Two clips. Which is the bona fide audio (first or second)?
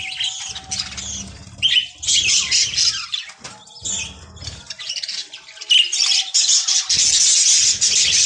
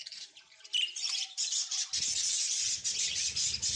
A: first